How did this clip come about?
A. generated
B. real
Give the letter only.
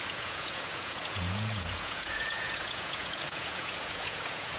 A